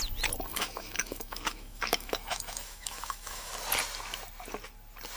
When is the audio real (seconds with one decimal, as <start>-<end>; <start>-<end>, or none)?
0.0-0.5; 3.5-5.2